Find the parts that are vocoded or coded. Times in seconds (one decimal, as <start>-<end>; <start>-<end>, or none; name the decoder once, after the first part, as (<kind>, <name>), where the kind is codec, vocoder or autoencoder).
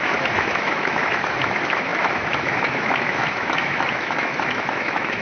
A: 0.0-5.2 (autoencoder, DAC-VAE)